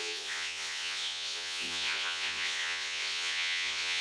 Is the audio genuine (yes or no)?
no